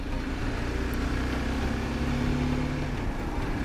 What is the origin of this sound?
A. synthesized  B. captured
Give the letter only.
B